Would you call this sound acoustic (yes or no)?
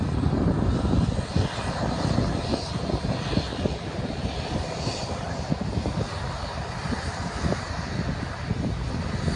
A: yes